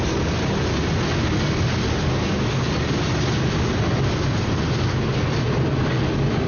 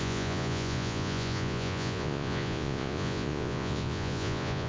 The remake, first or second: second